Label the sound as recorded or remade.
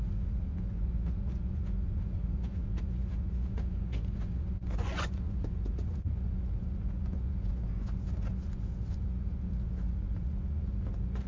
remade